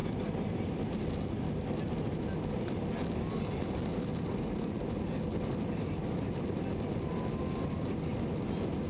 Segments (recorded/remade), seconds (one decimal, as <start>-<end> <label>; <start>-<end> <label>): 0.0-8.9 recorded

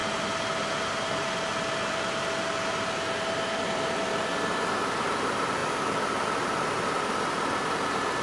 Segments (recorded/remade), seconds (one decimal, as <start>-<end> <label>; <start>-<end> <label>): 0.0-3.2 recorded; 3.2-5.6 remade; 5.6-6.9 recorded; 6.9-8.2 remade